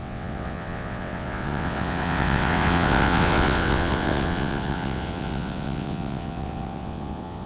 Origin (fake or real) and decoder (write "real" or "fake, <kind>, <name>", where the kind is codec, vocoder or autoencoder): fake, vocoder, WaveNeXt